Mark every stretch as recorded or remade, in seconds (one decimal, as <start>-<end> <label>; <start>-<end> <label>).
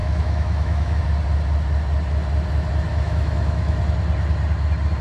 0.0-1.0 remade; 1.0-2.9 recorded; 2.9-3.8 remade; 3.8-5.0 recorded